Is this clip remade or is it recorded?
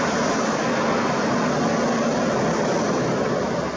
recorded